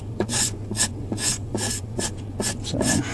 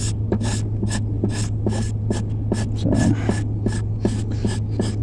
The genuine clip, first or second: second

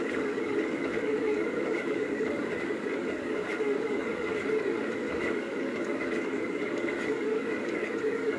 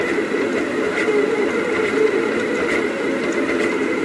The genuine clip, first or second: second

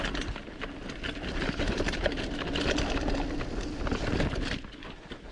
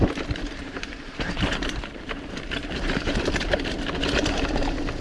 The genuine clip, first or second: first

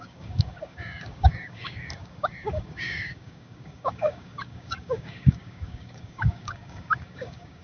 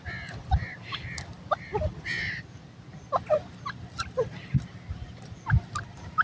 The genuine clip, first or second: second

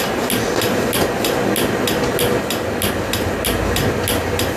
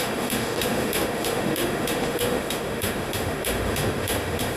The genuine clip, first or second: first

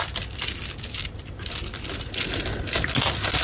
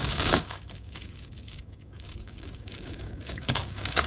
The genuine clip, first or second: first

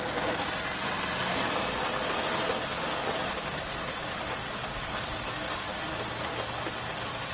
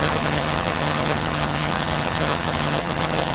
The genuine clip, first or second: first